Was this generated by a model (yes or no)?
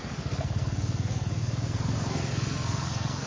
yes